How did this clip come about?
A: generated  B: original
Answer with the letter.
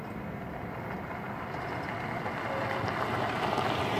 B